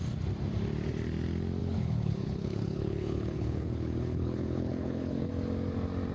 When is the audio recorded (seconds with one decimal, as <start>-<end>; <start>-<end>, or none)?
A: 0.0-1.6; 5.3-6.1